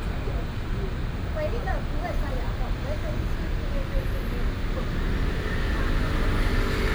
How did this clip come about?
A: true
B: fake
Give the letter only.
A